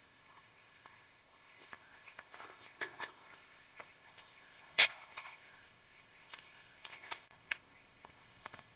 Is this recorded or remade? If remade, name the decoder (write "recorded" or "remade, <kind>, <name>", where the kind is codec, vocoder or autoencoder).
remade, codec, ZipCodec